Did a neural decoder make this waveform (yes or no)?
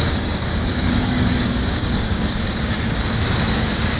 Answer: yes